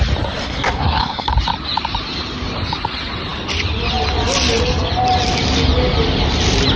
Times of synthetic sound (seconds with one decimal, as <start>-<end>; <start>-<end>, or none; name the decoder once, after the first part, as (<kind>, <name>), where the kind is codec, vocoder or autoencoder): 0.4-1.3 (codec, SNAC)